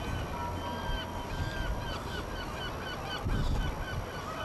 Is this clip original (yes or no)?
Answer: yes